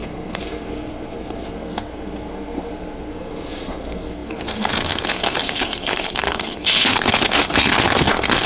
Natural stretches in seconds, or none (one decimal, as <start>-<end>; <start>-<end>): none